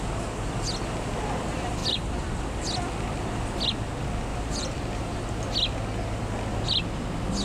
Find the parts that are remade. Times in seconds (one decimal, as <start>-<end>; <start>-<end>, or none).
4.3-5.2